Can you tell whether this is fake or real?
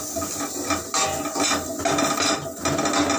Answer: real